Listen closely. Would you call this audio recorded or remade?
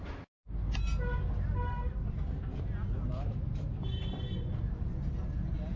recorded